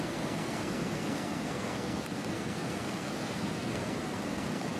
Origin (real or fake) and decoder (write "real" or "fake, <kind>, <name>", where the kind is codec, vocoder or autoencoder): fake, codec, SNAC